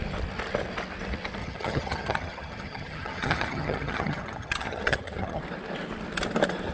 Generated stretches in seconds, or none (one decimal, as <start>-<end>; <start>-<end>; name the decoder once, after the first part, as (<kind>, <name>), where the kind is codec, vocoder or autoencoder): 1.4-5.4 (vocoder, HiFi-GAN)